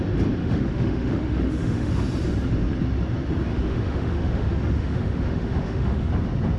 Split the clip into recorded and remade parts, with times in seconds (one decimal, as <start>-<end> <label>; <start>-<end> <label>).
0.0-0.4 recorded; 0.4-1.9 remade; 1.9-3.5 recorded; 3.5-6.1 remade; 6.1-6.6 recorded